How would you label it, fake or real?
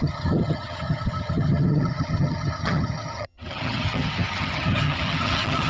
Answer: fake